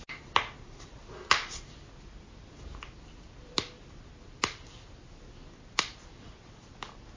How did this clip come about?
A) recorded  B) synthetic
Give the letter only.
A